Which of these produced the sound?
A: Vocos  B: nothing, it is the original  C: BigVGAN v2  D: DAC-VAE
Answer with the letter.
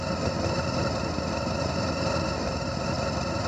B